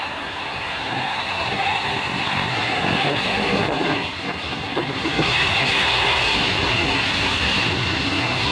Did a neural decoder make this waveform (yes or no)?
yes